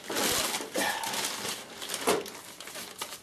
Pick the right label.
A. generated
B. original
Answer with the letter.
B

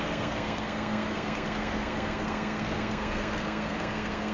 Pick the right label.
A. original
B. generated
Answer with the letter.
B